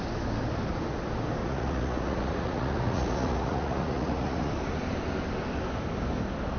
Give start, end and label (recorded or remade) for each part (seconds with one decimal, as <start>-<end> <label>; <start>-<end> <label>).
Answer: 0.0-1.4 recorded; 1.4-4.5 remade; 4.5-6.6 recorded